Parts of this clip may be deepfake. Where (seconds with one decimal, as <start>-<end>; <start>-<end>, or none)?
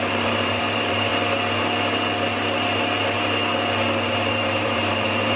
0.0-1.1; 4.3-5.4